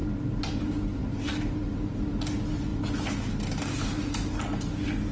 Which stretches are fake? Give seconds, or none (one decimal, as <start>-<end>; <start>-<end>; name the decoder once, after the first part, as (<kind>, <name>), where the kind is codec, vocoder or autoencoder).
none